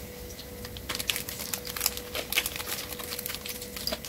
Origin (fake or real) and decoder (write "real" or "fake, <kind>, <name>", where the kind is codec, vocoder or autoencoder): real